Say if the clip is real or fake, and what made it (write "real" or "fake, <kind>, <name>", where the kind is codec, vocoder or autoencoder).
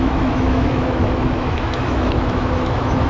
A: fake, autoencoder, DAC-VAE